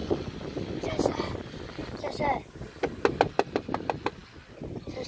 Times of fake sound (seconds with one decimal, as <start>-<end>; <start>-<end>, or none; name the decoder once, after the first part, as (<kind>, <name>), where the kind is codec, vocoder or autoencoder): none